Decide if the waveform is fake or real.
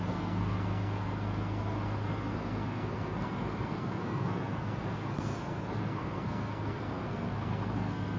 fake